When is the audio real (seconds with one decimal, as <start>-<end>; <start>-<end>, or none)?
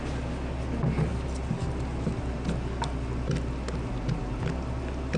0.0-5.2